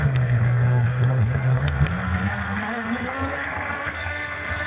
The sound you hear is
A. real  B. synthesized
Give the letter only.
B